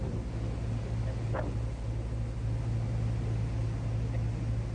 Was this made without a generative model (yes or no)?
yes